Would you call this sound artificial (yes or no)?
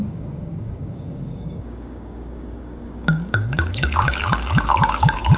yes